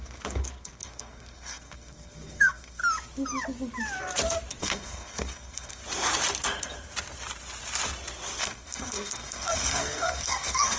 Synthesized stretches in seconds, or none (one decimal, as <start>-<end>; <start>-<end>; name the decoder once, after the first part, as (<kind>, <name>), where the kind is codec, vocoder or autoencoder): 0.0-2.8 (codec, SNAC); 4.6-5.8; 8.4-10.8

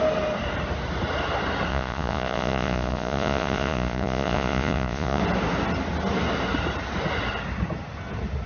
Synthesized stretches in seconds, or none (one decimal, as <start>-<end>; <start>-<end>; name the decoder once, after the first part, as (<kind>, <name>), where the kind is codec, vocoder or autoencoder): 1.7-5.2 (vocoder, Vocos)

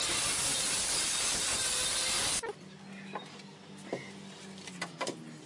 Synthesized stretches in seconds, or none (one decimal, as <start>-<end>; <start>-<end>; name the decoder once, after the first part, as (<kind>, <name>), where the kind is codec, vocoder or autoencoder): none

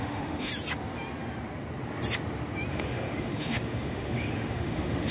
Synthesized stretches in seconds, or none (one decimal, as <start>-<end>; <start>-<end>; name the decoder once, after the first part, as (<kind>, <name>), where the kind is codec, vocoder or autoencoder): 0.0-0.5 (autoencoder, DAC-VAE); 2.7-5.1

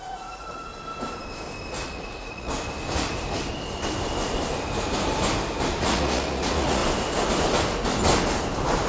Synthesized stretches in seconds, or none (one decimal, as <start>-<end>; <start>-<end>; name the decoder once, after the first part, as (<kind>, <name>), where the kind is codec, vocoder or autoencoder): 0.0-0.7 (vocoder, Vocos); 1.7-2.5; 5.8-6.8

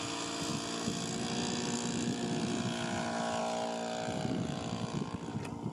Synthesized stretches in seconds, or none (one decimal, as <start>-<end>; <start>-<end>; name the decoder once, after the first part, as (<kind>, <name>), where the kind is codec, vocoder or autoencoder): none

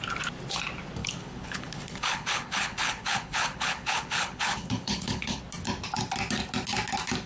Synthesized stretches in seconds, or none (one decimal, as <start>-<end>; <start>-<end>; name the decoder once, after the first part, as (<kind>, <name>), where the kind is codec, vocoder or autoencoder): 1.0-5.4 (codec, HILCodec)